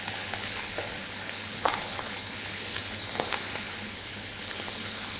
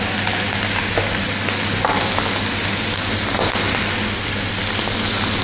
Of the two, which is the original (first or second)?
second